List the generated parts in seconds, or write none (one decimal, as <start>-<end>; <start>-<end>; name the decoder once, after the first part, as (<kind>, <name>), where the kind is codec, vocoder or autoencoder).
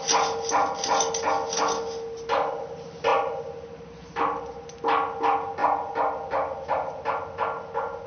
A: none